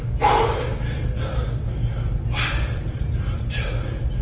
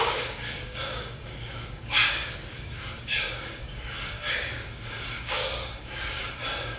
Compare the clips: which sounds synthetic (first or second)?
second